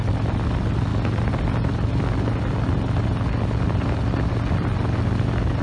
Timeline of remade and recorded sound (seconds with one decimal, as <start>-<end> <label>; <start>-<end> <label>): 0.0-5.6 recorded